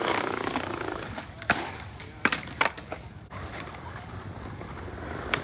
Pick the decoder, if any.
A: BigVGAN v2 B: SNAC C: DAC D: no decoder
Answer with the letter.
C